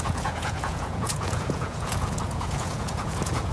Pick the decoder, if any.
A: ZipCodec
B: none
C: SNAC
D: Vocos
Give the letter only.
D